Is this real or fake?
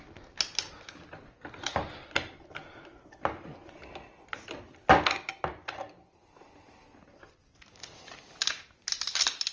real